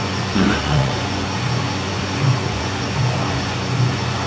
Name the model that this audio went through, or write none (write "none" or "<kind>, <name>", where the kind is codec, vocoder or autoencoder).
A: vocoder, Vocos